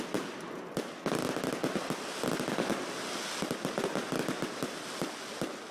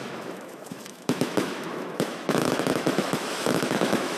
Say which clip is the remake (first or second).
second